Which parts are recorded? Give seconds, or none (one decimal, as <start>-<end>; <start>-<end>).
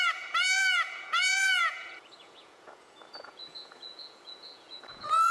none